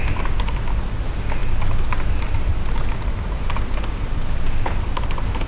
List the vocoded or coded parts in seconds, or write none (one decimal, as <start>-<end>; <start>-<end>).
none